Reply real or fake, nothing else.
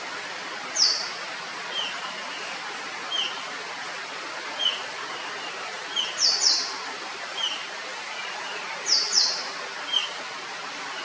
fake